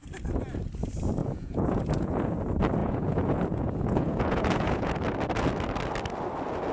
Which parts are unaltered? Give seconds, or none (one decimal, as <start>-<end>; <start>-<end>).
0.0-1.2; 2.4-2.8; 4.9-6.7